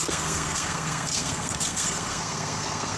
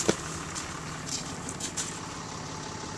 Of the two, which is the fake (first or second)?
first